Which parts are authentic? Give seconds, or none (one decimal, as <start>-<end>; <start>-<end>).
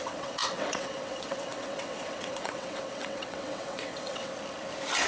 4.3-5.1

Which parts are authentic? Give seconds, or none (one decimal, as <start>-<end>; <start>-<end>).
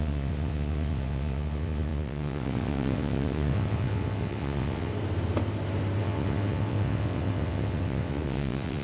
4.9-6.0